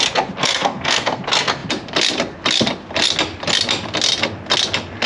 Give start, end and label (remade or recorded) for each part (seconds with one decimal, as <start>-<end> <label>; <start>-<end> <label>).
0.0-0.4 recorded; 0.4-1.2 remade; 1.2-5.1 recorded